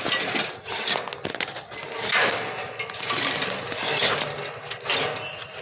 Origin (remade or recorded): recorded